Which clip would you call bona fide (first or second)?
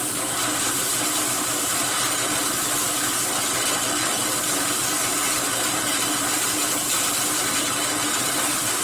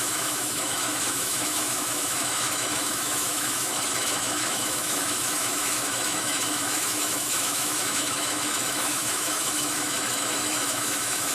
first